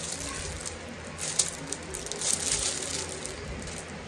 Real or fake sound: real